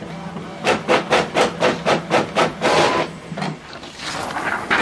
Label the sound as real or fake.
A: real